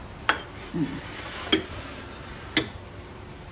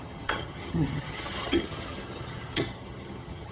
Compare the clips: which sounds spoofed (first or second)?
second